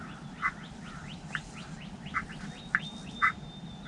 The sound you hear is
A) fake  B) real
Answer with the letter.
B